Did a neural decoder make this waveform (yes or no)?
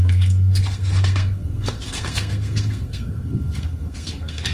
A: yes